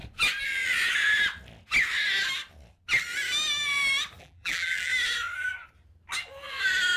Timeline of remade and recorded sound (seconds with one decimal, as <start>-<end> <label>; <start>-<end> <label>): 0.0-4.2 recorded; 4.2-4.9 remade; 4.9-7.0 recorded